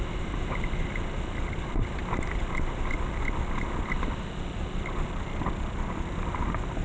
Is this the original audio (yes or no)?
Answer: yes